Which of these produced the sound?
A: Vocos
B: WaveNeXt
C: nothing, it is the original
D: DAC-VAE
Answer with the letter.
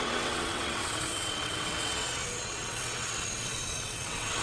B